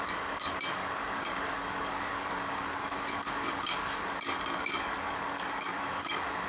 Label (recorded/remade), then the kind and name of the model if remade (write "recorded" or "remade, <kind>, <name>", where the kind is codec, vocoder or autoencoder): remade, codec, DAC